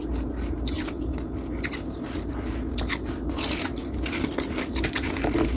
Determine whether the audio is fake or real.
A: real